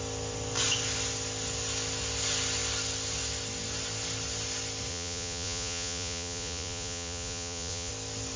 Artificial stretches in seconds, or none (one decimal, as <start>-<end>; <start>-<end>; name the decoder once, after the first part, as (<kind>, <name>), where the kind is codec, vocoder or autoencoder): 4.9-7.9 (vocoder, Vocos)